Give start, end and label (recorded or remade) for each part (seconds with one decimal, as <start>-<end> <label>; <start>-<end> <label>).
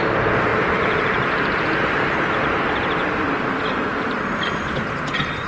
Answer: 0.0-0.5 recorded; 0.5-2.2 remade; 2.2-3.9 recorded; 3.9-5.1 remade; 5.1-5.5 recorded